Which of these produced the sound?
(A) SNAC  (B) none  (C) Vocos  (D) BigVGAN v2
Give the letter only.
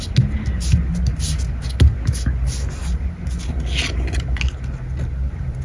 B